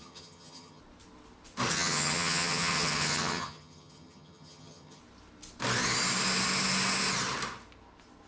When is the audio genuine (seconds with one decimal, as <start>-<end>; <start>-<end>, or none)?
0.8-1.7; 5.0-8.3